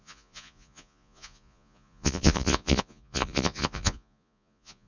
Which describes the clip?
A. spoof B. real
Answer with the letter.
A